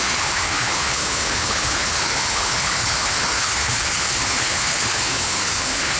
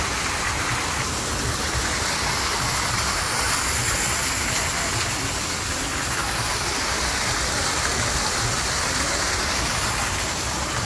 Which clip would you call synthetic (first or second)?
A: first